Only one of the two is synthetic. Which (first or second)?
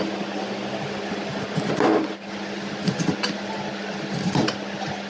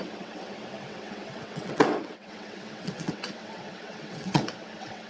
second